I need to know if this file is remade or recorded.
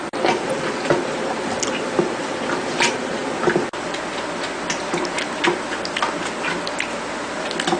recorded